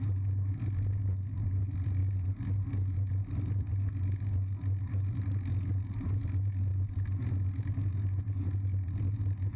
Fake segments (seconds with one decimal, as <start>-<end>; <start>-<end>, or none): none